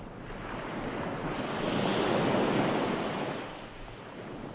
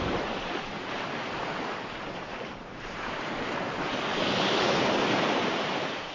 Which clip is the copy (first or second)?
second